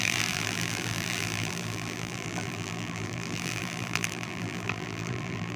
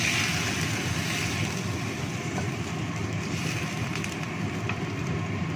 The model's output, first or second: first